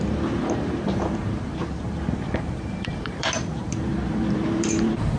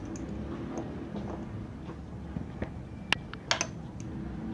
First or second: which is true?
second